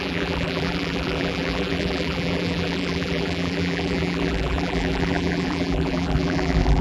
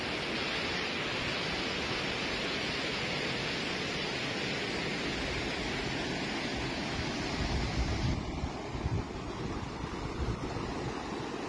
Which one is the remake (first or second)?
first